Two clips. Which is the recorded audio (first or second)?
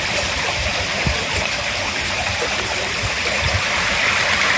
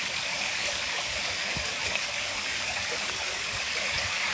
first